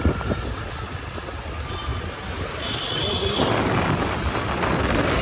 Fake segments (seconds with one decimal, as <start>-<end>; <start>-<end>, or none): none

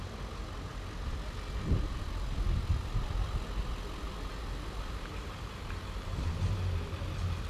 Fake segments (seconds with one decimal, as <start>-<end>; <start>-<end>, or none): none

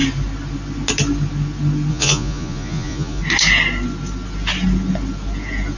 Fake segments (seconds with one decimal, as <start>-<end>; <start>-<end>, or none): 1.9-3.2